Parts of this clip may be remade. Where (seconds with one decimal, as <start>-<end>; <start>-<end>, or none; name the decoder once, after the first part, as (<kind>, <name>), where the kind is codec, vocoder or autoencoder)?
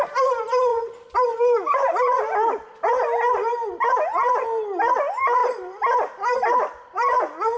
0.7-1.3 (vocoder, BigVGAN v2); 5.4-7.6